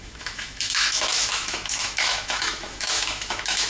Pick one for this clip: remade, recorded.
remade